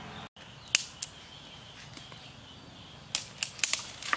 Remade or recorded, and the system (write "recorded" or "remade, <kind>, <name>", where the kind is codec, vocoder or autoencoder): recorded